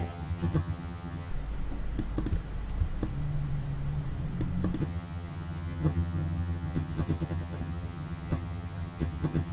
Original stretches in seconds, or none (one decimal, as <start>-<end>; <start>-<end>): 1.3-4.8